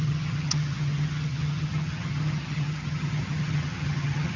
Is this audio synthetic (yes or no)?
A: yes